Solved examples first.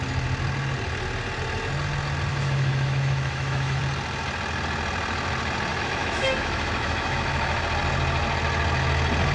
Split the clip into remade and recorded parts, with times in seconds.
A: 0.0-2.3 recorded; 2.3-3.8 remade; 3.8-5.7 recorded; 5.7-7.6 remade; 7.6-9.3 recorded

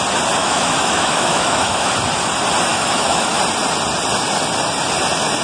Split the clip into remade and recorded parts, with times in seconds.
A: 0.0-0.4 recorded; 0.4-1.9 remade; 1.9-2.7 recorded; 2.7-3.4 remade; 3.4-5.4 recorded

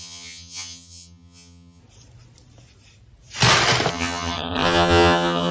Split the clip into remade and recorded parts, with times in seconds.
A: 0.0-1.8 remade; 1.8-3.9 recorded; 3.9-5.5 remade

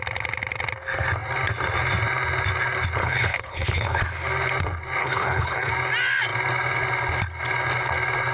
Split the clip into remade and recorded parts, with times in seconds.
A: 0.0-3.0 recorded; 3.0-4.0 remade; 4.0-5.0 recorded; 5.0-5.7 remade; 5.7-8.3 recorded

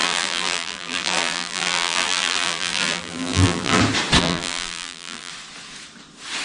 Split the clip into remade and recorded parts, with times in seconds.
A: 0.0-3.8 remade; 3.8-4.2 recorded; 4.2-5.3 remade; 5.3-6.4 recorded

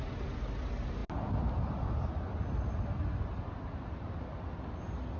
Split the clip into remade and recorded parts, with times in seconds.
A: 0.0-5.2 recorded